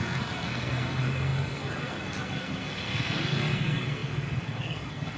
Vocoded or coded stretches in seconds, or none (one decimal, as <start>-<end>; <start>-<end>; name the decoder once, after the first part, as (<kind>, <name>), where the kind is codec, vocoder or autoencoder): 0.0-5.2 (codec, SNAC)